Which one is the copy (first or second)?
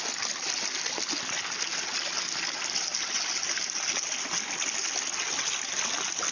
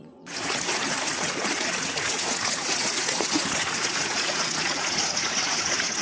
second